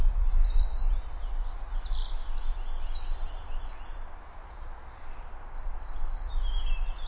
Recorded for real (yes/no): yes